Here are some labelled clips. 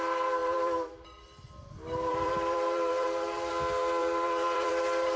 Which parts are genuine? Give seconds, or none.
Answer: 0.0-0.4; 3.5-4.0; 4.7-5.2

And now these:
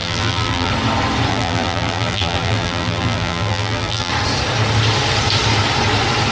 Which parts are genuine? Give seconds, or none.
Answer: 0.7-1.3; 4.1-6.3

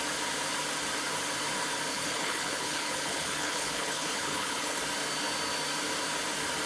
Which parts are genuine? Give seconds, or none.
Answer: 0.0-1.9; 4.8-6.7

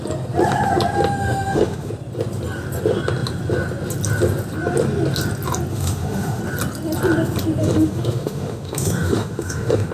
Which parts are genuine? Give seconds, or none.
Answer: 0.0-1.2; 1.9-5.7; 6.4-7.6

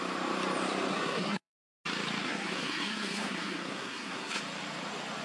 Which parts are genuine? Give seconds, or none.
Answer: 0.0-0.9; 1.6-2.2; 4.4-5.2